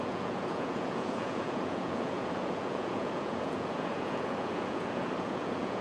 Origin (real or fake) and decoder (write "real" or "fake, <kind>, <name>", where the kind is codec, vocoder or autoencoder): fake, vocoder, Vocos